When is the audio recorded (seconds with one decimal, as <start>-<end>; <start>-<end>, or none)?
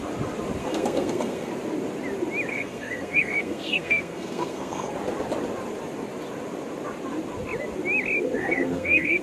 0.0-0.6; 1.5-2.5; 4.9-8.4